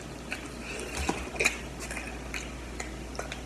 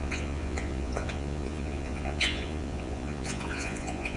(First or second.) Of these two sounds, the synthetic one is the second